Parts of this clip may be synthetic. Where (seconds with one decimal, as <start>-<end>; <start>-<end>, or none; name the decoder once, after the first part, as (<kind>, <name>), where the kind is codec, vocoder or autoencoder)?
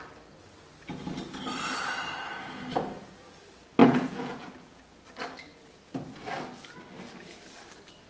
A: 3.8-4.8 (vocoder, Vocos)